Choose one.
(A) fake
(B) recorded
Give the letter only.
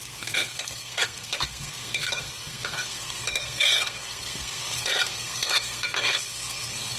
A